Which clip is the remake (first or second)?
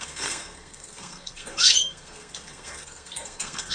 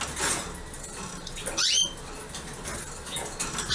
first